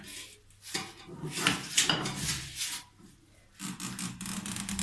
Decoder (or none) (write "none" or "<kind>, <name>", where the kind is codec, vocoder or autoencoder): none